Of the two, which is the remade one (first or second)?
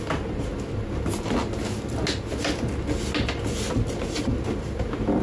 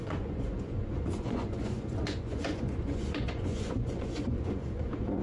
second